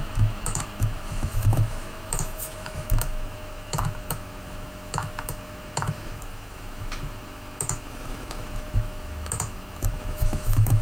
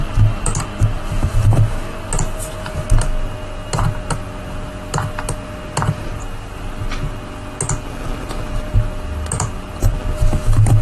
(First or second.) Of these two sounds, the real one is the second